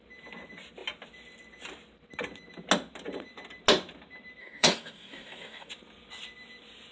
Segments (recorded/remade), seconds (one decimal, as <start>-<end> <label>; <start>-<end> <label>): 0.0-4.4 recorded; 4.4-5.7 remade; 5.7-6.9 recorded